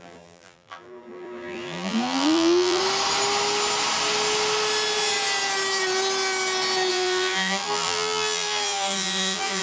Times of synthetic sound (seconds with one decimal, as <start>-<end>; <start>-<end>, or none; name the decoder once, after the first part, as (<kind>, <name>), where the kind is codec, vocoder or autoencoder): 0.0-2.8 (vocoder, BigVGAN v2); 6.9-9.6